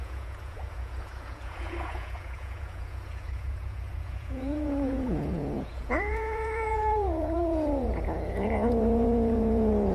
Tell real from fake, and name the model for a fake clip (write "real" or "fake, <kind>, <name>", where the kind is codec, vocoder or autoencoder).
fake, vocoder, Vocos